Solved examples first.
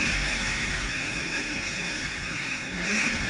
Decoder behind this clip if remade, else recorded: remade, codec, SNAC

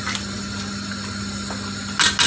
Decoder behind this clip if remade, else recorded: recorded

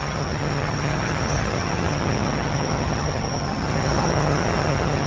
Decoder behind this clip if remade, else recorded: remade, vocoder, HiFi-GAN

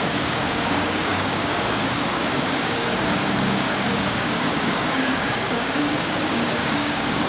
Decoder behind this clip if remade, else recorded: remade, codec, DAC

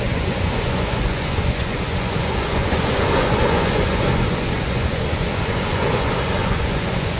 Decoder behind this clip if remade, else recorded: remade, vocoder, Vocos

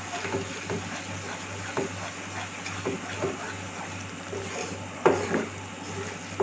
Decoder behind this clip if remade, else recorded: recorded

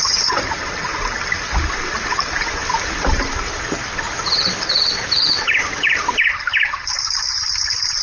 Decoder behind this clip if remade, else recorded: recorded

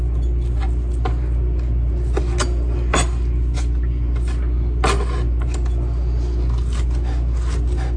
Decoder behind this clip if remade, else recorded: recorded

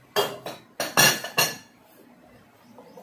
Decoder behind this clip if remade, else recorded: recorded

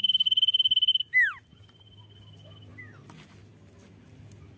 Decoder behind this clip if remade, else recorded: recorded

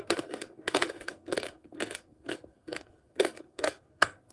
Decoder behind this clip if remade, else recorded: remade, codec, SNAC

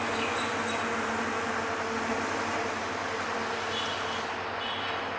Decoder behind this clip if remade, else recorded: recorded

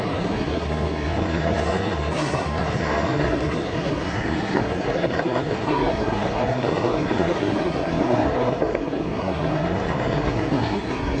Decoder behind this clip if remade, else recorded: remade, codec, SNAC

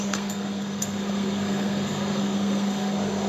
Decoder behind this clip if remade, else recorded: remade, codec, SNAC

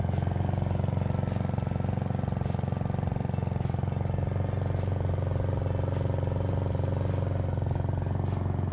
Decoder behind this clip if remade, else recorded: recorded